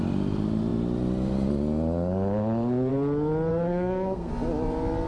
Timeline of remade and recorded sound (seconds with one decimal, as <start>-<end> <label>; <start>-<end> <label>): 0.0-3.5 recorded; 3.5-4.3 remade; 4.3-5.1 recorded